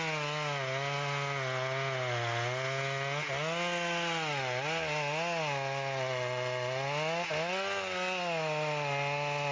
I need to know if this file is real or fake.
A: real